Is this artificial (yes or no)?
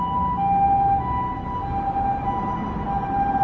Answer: no